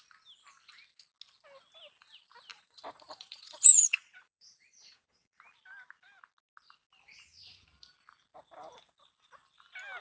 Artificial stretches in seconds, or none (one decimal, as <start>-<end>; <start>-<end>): 2.5-5.4